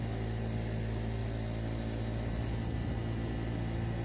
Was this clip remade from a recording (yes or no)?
no